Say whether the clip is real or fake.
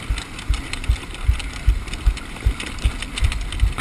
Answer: real